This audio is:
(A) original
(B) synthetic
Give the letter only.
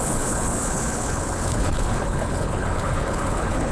B